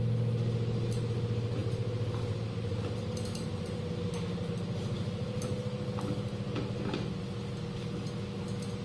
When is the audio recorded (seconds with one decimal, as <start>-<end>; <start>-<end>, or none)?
0.0-8.8